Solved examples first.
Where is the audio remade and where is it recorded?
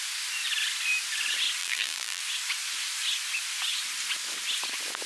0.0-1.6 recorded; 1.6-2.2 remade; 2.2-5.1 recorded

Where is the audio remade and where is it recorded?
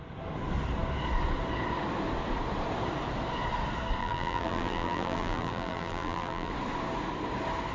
0.0-4.0 recorded; 4.0-6.5 remade; 6.5-7.7 recorded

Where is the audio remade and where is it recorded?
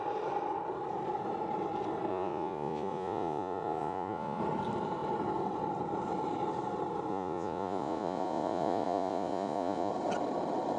0.0-2.1 recorded; 2.1-4.4 remade; 4.4-7.1 recorded; 7.1-9.9 remade; 9.9-10.8 recorded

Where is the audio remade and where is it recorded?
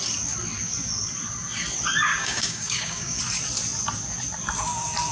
0.0-2.1 recorded; 2.1-3.2 remade; 3.2-5.1 recorded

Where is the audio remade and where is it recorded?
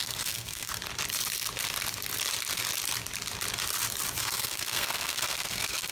0.0-0.7 remade; 0.7-4.2 recorded; 4.2-5.9 remade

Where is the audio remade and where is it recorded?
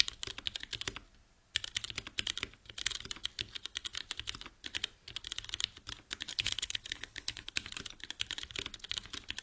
0.0-6.3 recorded; 6.3-7.5 remade; 7.5-9.4 recorded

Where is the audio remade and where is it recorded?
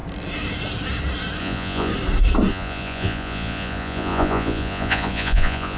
0.0-1.4 recorded; 1.4-1.9 remade; 1.9-2.5 recorded; 2.5-5.8 remade